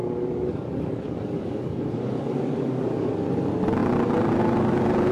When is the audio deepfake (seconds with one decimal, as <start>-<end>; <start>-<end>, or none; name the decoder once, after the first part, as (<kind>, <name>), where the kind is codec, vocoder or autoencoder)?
0.0-3.1 (codec, DAC)